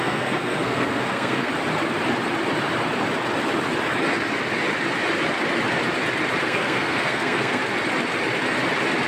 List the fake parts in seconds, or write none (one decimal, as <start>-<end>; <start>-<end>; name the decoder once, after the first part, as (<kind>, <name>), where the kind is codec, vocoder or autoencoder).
0.0-1.5 (codec, SNAC); 6.4-7.6